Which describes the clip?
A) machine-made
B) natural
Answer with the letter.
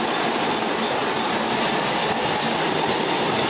B